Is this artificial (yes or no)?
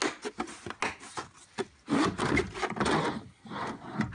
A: no